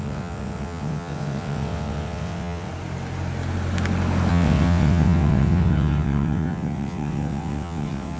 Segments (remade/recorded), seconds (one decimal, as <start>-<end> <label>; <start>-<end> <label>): 0.0-2.7 remade; 2.7-4.3 recorded; 4.3-8.2 remade